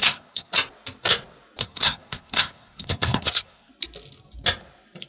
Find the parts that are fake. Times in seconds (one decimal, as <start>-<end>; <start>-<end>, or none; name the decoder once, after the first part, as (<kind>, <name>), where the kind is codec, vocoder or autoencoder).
0.0-0.5 (codec, SNAC); 1.6-3.7